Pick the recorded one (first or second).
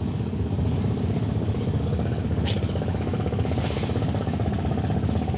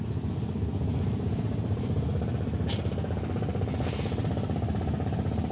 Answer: second